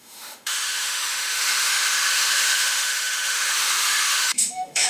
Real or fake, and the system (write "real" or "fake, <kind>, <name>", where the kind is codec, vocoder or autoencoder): fake, autoencoder, DAC-VAE